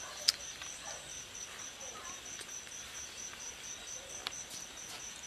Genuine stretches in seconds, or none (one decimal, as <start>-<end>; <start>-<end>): 0.0-1.1; 2.2-3.8; 4.7-5.3